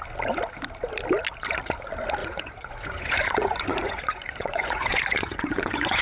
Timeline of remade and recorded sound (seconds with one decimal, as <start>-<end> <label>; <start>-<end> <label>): 0.0-2.2 recorded; 2.2-6.0 remade